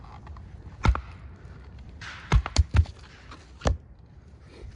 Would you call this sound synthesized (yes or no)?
no